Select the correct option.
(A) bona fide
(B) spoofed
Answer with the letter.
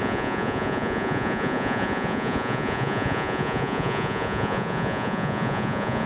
B